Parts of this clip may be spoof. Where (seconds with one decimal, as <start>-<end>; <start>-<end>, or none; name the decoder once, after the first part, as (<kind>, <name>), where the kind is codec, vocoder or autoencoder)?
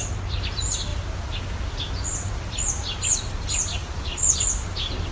3.8-4.4 (vocoder, Vocos)